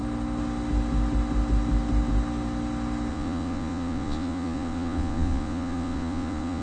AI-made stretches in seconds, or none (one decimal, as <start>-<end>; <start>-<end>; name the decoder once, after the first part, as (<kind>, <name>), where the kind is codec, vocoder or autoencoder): 3.1-6.6 (vocoder, Vocos)